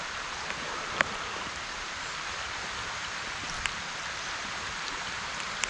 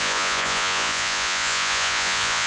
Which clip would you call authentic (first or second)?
first